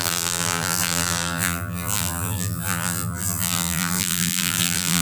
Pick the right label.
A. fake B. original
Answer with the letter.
A